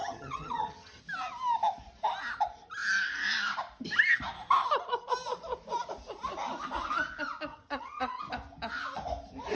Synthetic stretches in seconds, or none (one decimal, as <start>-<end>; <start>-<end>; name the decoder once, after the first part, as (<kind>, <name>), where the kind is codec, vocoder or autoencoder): 0.0-1.0 (vocoder, HiFi-GAN); 7.5-8.2